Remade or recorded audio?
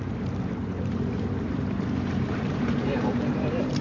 remade